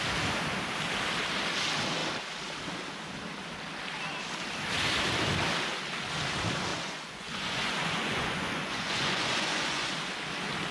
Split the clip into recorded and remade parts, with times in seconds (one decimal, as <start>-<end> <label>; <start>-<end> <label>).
0.0-6.7 recorded; 6.7-9.9 remade; 9.9-10.7 recorded